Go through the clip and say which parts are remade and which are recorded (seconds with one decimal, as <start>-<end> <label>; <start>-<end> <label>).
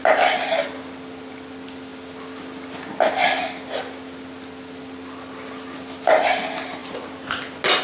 0.0-7.8 recorded